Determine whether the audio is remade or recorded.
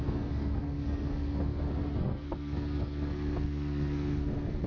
remade